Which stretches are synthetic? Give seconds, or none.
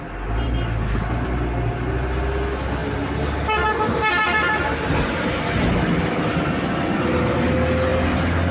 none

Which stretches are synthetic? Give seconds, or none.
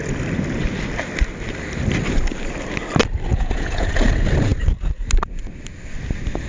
3.3-3.9